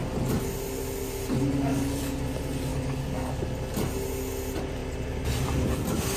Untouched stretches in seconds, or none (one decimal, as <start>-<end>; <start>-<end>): 0.0-1.7; 2.2-2.7; 3.4-6.2